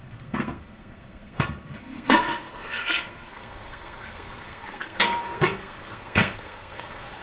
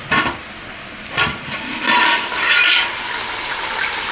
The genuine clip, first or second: second